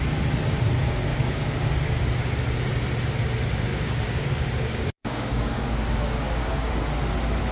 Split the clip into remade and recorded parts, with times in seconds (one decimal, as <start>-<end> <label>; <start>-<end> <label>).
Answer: 0.0-1.1 recorded; 1.1-1.7 remade; 1.7-3.7 recorded; 3.7-6.7 remade; 6.7-7.5 recorded